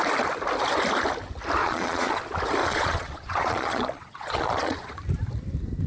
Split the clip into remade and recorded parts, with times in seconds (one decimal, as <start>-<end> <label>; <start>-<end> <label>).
0.0-1.6 recorded; 1.6-2.2 remade; 2.2-2.6 recorded; 2.6-4.9 remade; 4.9-5.9 recorded

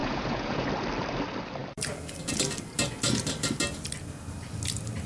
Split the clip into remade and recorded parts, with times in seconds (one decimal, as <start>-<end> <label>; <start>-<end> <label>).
0.0-0.7 remade; 0.7-5.1 recorded